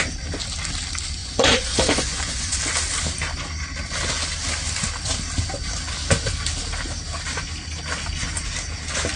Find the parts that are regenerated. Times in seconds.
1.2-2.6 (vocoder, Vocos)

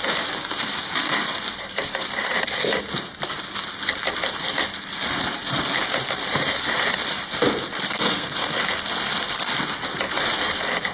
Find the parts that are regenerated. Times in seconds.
7.9-8.6 (codec, SNAC)

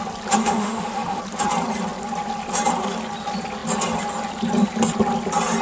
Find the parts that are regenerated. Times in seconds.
0.4-1.2 (autoencoder, DAC-VAE)

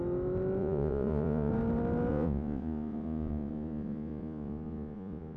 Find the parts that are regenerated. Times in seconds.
0.6-1.5 (vocoder, Vocos); 2.1-5.4

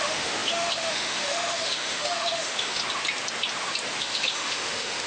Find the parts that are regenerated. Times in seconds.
0.0-2.8 (autoencoder, DAC-VAE); 4.0-5.1

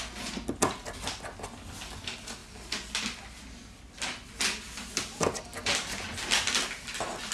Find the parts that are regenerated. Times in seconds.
none